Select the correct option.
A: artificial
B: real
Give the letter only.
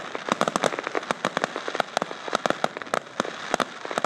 B